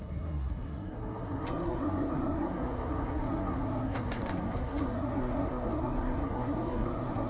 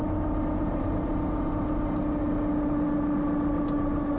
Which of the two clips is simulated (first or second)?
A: first